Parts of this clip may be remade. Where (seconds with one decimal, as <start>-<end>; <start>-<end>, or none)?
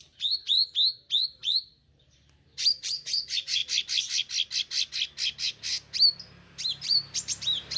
0.0-0.6; 1.1-3.6; 6.7-7.8